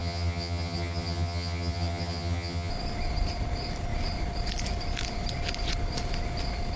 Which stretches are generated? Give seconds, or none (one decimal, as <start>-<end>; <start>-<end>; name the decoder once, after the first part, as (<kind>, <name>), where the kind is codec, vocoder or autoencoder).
0.0-2.7 (vocoder, HiFi-GAN)